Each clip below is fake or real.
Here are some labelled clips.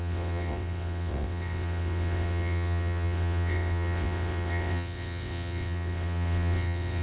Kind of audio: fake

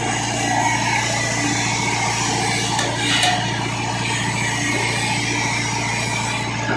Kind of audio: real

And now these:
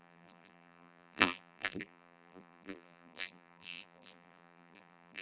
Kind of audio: fake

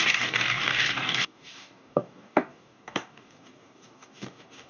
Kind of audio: fake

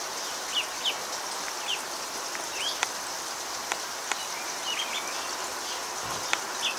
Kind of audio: real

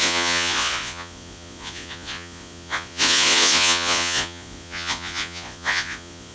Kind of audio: fake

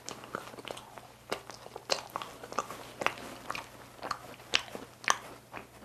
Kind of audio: real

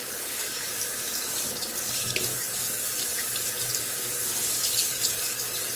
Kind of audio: fake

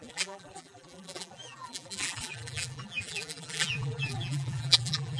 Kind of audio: fake